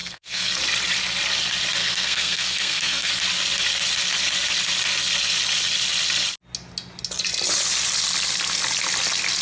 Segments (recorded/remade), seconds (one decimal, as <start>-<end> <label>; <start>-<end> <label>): 0.0-0.6 remade; 0.6-1.8 recorded; 1.8-3.1 remade; 3.1-9.4 recorded